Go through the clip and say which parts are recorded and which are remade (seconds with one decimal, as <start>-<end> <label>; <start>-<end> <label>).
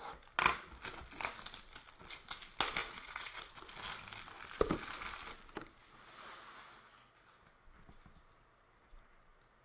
0.0-2.8 recorded; 2.8-3.5 remade; 3.5-9.6 recorded